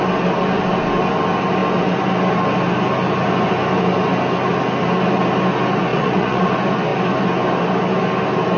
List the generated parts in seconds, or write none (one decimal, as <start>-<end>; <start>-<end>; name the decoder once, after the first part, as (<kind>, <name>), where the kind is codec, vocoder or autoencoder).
5.9-6.5 (vocoder, Vocos)